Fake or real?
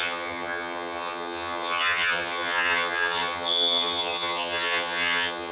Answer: fake